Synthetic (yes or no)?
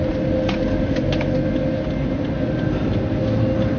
no